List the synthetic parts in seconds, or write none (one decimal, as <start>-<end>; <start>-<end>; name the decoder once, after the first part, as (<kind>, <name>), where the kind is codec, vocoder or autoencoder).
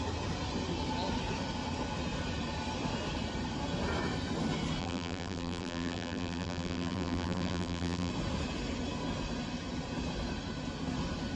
4.8-8.1 (vocoder, BigVGAN v2)